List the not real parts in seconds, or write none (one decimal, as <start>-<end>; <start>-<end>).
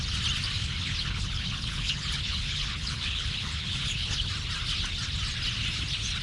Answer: 0.6-4.3